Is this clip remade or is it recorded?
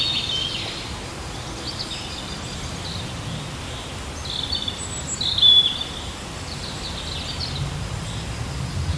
recorded